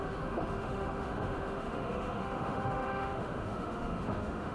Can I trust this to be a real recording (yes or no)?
no